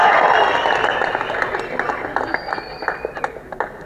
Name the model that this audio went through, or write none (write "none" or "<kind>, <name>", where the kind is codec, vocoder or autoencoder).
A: none